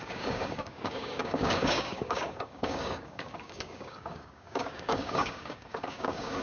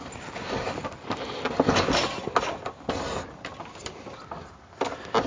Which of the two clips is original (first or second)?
second